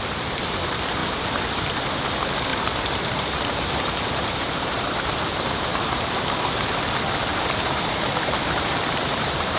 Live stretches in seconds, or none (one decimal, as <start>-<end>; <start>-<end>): 0.0-1.0; 1.6-2.5; 6.8-7.3